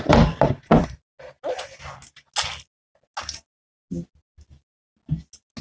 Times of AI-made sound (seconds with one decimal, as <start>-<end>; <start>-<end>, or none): none